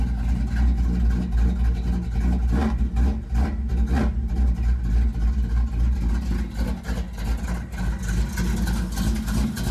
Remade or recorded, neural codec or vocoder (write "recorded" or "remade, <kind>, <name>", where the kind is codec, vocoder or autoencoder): recorded